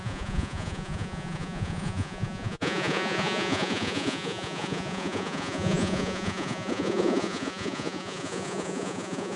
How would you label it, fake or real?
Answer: fake